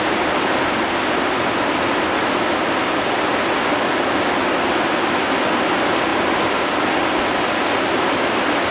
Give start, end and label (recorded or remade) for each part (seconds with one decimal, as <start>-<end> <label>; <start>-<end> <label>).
0.0-6.1 recorded; 6.1-6.8 remade; 6.8-8.7 recorded